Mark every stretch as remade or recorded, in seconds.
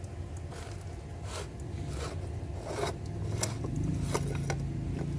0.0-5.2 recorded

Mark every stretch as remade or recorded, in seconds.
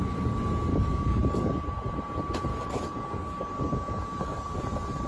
0.0-0.7 recorded; 0.7-1.6 remade; 1.6-2.5 recorded; 2.5-4.6 remade; 4.6-5.1 recorded